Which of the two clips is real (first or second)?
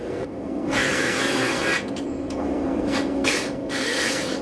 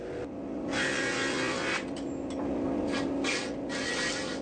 second